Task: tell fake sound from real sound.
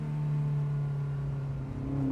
real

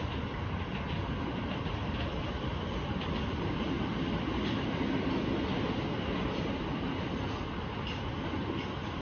real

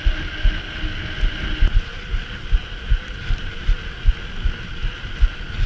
real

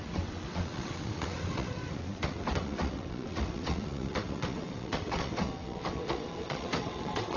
fake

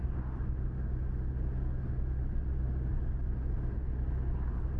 real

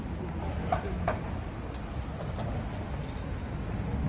real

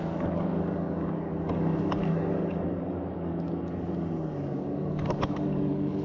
fake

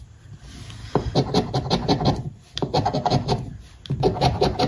real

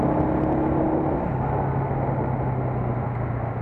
real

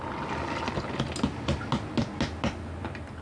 real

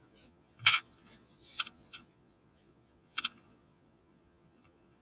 fake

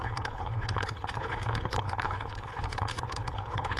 fake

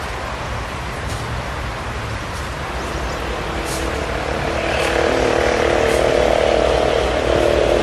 real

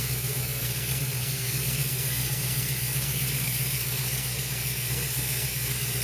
fake